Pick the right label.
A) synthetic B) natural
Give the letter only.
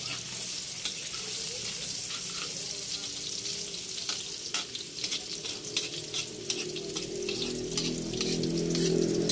B